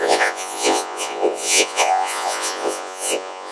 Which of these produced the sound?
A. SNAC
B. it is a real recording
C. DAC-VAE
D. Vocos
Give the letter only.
D